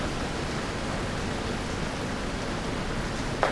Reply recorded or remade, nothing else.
recorded